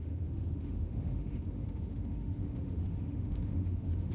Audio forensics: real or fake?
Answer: fake